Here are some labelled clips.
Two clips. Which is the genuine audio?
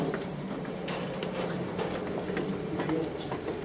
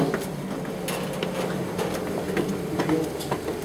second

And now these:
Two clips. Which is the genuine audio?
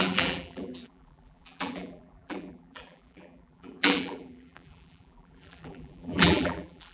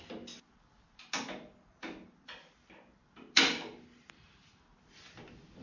second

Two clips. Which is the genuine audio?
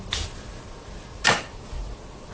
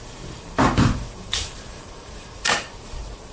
first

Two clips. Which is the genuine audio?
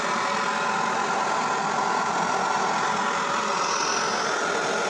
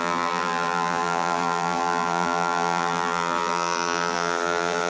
first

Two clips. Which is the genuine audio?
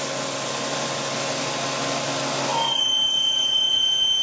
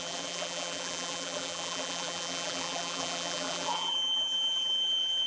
first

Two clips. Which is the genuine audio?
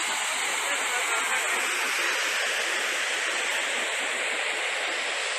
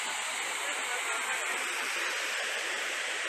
first